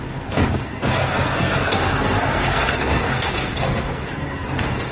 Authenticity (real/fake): fake